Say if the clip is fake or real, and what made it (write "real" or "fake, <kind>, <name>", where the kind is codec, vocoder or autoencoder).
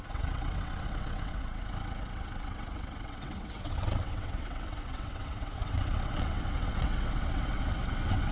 fake, vocoder, WaveNeXt